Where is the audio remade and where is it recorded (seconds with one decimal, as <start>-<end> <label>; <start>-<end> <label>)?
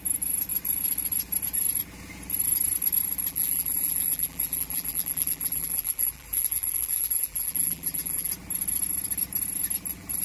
0.0-3.3 recorded; 3.3-8.3 remade; 8.3-10.2 recorded